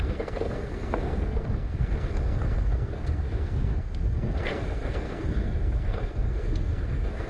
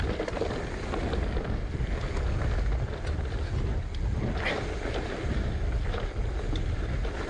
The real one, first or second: second